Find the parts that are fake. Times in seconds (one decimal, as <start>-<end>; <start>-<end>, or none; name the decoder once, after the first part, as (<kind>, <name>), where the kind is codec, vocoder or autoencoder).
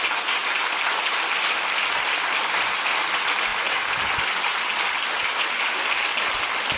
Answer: none